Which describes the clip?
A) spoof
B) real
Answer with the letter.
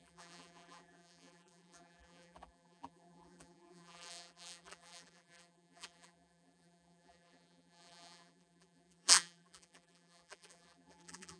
A